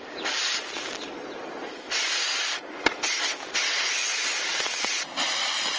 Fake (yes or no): no